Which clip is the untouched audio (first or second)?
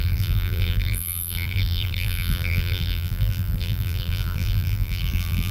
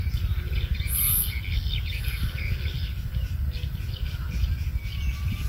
second